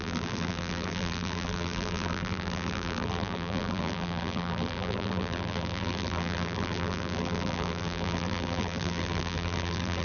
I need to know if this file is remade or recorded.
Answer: remade